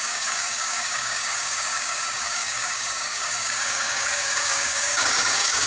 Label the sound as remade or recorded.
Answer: remade